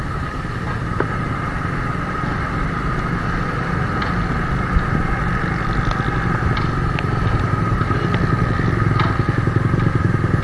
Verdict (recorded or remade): recorded